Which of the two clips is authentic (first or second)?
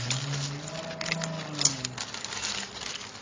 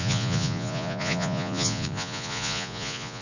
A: first